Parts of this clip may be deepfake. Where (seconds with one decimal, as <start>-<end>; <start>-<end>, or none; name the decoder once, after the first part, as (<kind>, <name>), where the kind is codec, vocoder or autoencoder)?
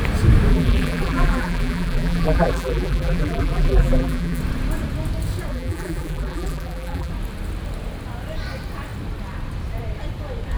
0.5-4.4 (vocoder, BigVGAN v2); 5.5-7.1